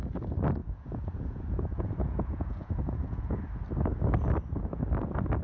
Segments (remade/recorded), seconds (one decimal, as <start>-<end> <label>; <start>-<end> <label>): 0.0-0.6 recorded; 0.6-3.4 remade; 3.4-5.4 recorded